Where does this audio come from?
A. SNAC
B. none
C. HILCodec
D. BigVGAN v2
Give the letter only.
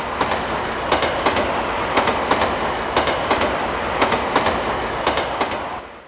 B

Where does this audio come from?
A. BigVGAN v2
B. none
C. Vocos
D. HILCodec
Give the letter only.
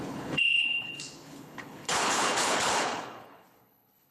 D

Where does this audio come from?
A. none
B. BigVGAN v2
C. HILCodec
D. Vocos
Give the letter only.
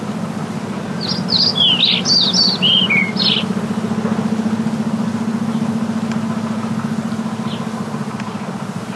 A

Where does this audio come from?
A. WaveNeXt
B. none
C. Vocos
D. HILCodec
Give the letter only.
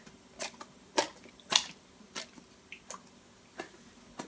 B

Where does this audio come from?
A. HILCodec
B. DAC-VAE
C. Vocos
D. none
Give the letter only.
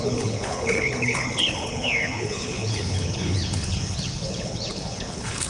A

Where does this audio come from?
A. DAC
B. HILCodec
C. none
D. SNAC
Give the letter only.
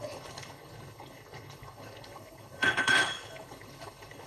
B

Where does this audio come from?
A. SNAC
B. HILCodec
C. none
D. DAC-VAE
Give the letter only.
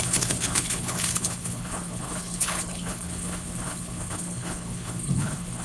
B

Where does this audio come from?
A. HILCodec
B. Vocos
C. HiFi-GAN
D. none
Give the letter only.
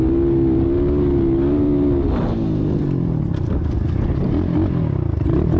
D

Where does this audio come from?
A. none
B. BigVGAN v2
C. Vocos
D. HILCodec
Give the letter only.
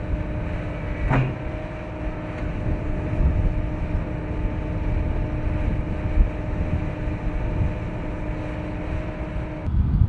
A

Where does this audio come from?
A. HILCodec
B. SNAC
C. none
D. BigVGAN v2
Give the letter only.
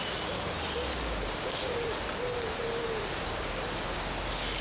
C